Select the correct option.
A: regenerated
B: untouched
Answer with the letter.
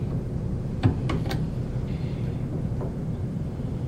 B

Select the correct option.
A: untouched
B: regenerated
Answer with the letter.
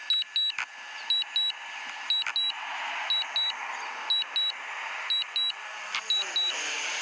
A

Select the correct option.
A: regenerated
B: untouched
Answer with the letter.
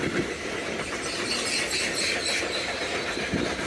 B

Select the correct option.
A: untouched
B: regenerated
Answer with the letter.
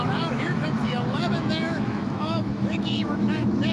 B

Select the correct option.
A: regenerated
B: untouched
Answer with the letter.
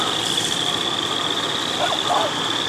B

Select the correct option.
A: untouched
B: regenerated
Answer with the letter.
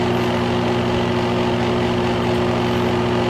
A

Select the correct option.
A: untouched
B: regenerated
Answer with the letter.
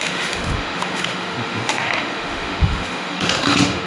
B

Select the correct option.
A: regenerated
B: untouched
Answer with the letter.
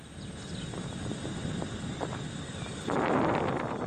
B